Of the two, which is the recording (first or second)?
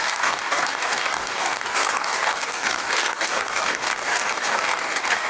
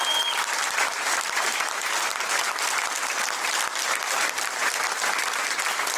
second